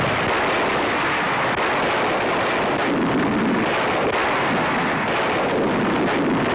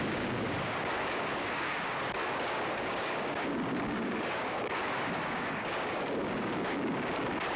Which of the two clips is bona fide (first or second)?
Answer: first